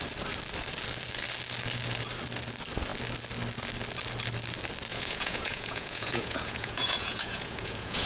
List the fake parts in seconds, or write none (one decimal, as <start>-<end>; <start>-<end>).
4.9-8.1